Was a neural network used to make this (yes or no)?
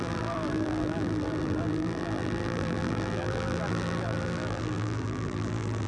yes